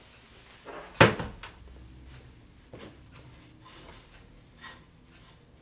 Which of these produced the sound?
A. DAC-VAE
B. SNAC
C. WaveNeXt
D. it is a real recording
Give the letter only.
D